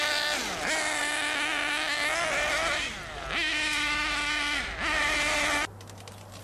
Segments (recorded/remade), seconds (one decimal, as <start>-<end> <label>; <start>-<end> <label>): 0.0-6.4 recorded